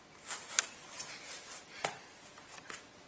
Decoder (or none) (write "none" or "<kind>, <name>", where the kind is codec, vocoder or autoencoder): none